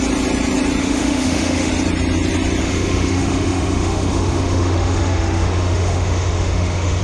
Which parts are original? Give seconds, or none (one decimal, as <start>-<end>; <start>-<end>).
0.0-0.8; 1.7-2.6